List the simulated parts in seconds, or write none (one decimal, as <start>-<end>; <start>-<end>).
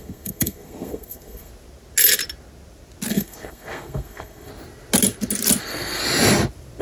0.0-1.5; 3.1-4.5; 5.6-6.0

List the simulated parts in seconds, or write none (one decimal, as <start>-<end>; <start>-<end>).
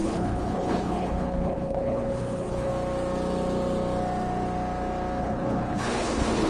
0.0-2.7; 5.2-6.5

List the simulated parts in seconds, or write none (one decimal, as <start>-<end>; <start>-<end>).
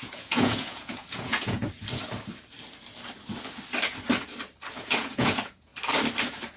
0.0-1.6; 4.8-5.7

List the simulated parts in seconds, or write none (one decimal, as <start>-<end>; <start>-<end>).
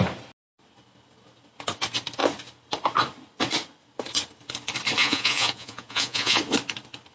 5.0-6.4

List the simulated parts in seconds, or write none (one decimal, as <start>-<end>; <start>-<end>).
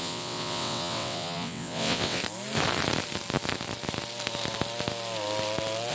0.0-2.2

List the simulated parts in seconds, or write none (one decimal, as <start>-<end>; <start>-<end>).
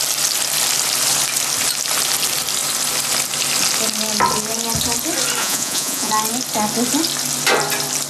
5.4-6.1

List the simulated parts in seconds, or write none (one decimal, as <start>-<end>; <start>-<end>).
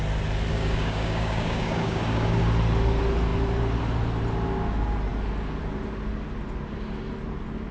0.5-2.4